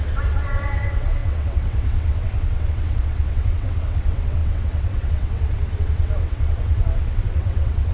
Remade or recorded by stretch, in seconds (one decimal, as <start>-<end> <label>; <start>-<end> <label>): 0.0-7.9 remade